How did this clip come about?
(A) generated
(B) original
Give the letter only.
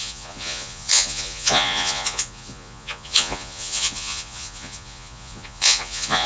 A